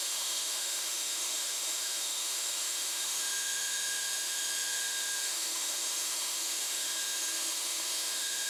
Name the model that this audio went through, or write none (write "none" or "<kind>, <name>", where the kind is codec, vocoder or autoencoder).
autoencoder, DAC-VAE